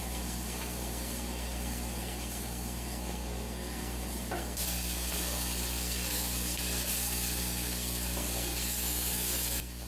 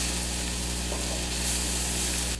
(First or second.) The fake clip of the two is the first